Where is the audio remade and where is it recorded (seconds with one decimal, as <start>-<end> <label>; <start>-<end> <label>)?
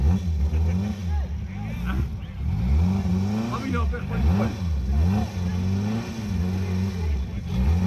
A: 0.0-7.9 recorded